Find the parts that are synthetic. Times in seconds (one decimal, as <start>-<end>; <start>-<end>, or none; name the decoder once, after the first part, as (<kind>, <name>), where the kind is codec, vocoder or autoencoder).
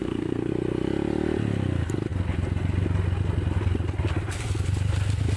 0.0-0.5 (codec, SNAC)